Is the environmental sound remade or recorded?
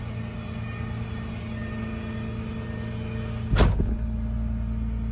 recorded